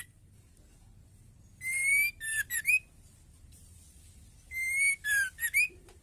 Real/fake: real